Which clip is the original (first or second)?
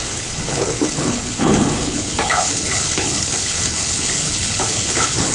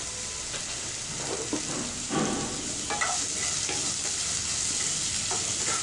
second